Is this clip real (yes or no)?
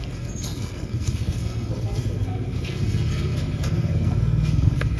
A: no